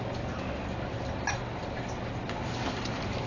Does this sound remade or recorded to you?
recorded